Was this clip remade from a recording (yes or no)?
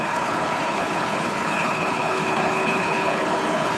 yes